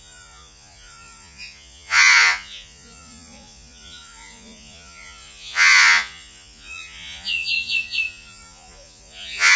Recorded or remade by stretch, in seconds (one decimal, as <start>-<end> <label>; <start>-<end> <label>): 0.0-9.6 remade